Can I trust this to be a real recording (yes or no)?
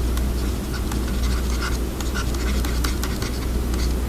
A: yes